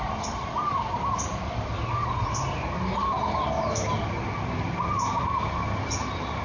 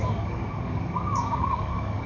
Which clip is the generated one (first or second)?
second